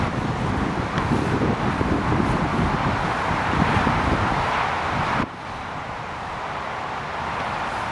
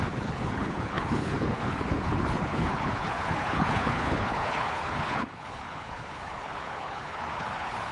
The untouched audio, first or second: first